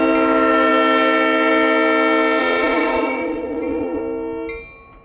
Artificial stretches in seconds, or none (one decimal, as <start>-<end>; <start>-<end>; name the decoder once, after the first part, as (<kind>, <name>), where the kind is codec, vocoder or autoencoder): 2.4-4.0 (vocoder, Vocos)